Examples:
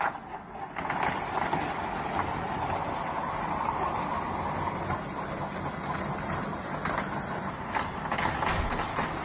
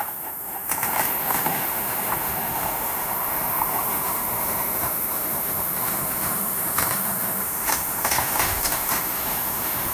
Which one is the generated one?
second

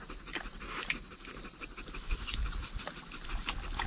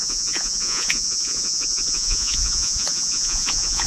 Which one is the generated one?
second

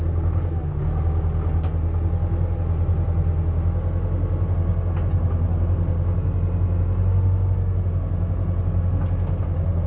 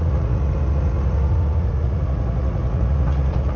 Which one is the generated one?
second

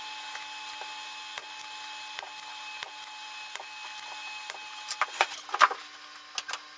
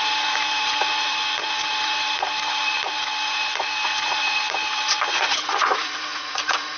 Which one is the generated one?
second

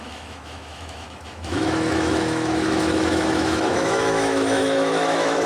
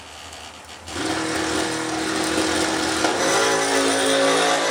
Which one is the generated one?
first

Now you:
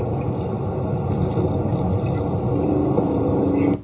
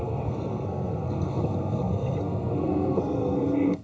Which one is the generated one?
second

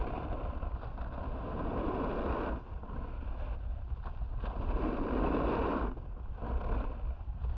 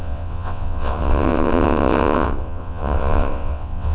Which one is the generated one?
second